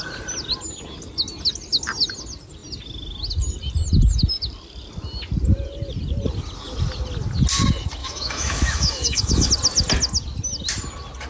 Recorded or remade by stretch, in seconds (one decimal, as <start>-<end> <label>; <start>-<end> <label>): 0.0-8.0 recorded; 8.0-9.5 remade; 9.5-11.3 recorded